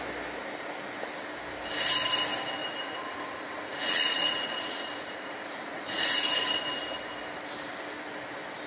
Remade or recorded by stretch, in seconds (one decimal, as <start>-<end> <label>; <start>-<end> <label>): 0.0-2.6 recorded; 2.6-6.6 remade; 6.6-8.7 recorded